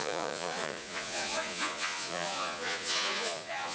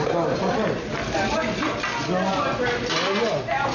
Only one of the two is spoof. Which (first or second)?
first